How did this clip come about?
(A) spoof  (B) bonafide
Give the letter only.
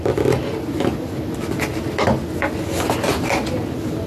B